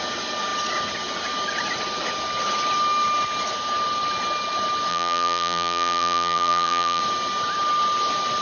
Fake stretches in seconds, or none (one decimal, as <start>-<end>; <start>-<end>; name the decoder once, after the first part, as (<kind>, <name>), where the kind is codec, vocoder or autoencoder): 4.9-7.0 (vocoder, BigVGAN v2)